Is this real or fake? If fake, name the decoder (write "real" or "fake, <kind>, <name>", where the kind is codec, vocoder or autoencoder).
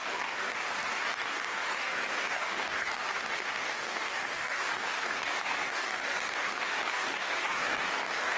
fake, codec, DAC